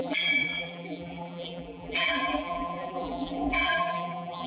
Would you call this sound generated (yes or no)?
yes